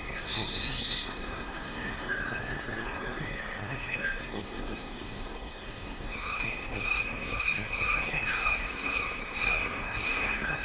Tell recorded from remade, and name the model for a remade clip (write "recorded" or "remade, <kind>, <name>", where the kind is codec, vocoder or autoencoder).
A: remade, codec, SNAC